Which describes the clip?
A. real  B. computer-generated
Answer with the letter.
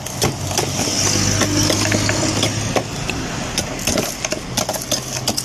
A